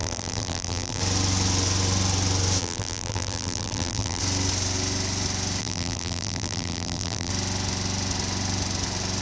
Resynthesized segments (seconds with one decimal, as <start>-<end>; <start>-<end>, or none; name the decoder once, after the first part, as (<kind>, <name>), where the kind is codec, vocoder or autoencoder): 0.0-1.0 (vocoder, BigVGAN v2); 2.6-4.2; 5.6-7.3